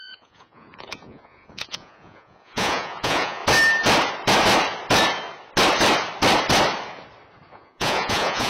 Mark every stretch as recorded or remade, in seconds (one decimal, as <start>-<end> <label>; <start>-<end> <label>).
0.0-3.4 remade; 3.4-7.5 recorded; 7.5-8.5 remade